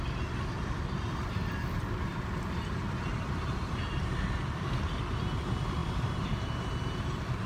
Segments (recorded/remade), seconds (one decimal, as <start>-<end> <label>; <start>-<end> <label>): 0.0-5.8 recorded; 5.8-6.6 remade; 6.6-7.5 recorded